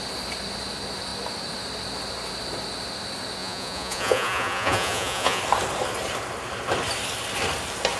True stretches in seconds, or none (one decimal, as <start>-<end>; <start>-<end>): 0.0-3.4; 5.4-8.0